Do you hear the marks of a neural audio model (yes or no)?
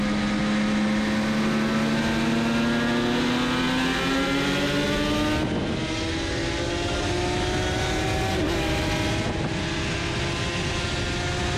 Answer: no